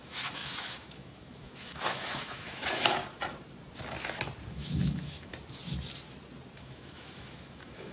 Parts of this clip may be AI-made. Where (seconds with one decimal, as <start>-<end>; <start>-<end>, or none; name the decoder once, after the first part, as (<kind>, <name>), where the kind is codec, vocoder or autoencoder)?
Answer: 0.0-3.0 (autoencoder, DAC-VAE); 4.5-5.3; 6.6-7.9